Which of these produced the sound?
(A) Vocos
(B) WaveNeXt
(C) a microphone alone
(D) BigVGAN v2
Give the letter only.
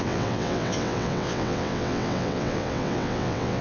B